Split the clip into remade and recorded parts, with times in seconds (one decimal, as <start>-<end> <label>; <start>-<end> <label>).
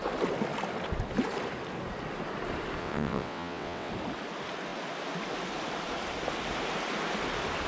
0.0-2.8 recorded; 2.8-3.9 remade; 3.9-7.7 recorded